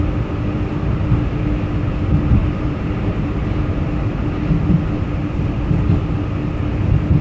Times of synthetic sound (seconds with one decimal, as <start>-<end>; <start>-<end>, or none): 2.4-3.8